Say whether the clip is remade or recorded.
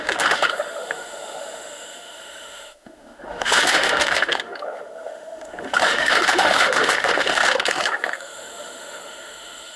remade